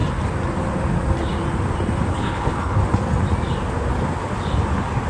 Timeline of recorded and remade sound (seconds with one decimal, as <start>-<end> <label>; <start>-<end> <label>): 0.0-2.1 recorded; 2.1-2.8 remade; 2.8-5.1 recorded